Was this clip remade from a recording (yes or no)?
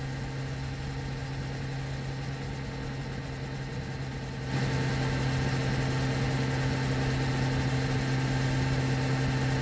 no